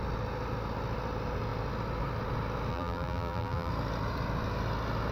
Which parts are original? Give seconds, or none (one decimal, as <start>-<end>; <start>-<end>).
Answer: 0.0-2.7; 3.7-5.1